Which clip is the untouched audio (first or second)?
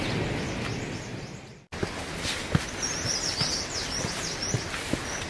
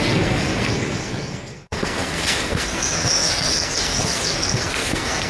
first